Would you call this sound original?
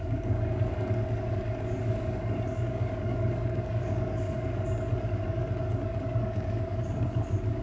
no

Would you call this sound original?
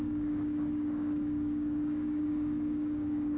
no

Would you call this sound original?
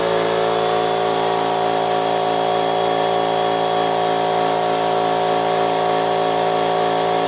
yes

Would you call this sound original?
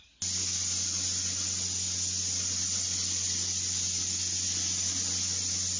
yes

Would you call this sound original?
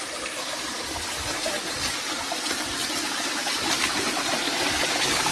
yes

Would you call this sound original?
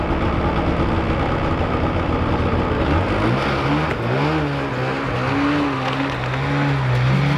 yes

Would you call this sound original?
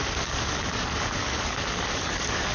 no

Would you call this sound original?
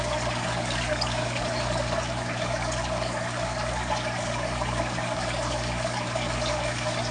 no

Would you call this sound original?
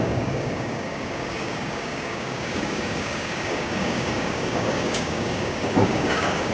no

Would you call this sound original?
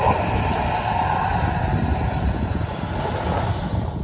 yes